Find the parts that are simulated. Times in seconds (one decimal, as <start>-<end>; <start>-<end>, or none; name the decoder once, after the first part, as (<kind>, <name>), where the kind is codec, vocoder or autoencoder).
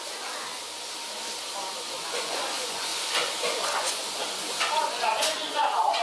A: 0.0-0.5 (vocoder, Vocos); 1.8-6.0